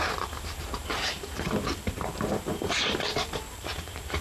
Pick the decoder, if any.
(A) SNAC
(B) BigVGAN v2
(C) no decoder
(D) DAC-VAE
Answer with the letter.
B